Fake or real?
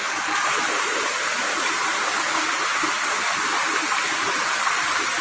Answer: real